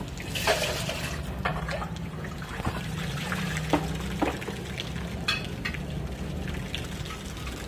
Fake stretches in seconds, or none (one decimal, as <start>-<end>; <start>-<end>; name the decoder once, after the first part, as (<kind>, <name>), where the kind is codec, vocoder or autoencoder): 1.5-3.4 (vocoder, BigVGAN v2)